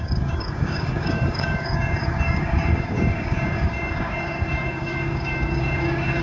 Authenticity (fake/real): fake